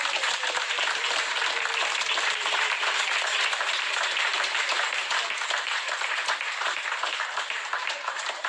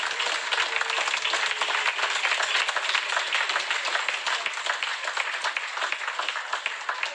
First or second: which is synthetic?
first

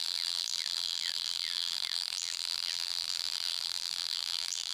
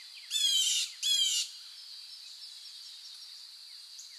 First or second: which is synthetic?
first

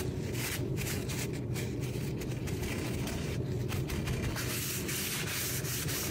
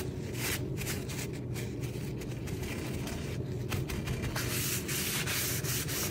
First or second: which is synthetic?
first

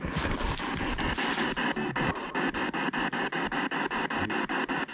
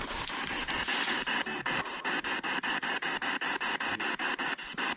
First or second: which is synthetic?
second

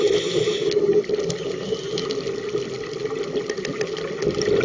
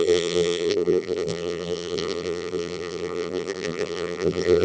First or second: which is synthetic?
second